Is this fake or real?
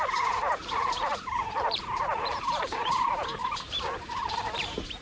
fake